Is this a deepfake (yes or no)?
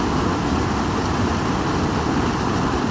no